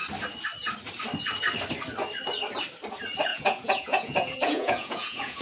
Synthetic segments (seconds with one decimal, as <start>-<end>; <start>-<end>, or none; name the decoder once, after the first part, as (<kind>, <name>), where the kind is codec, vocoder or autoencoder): 3.3-5.4 (vocoder, Vocos)

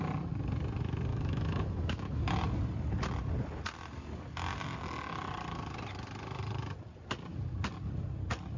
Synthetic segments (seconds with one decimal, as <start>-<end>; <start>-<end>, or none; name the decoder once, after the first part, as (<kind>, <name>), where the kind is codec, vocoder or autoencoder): 1.1-2.2 (autoencoder, DAC-VAE)